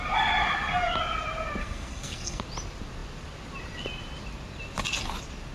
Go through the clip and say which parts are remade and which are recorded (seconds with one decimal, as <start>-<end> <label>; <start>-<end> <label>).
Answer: 0.0-1.6 recorded; 1.6-2.4 remade; 2.4-5.5 recorded